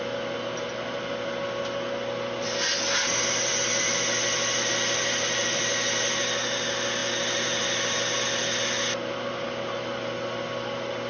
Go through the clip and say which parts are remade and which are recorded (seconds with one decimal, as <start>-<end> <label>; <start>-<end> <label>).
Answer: 0.0-11.1 recorded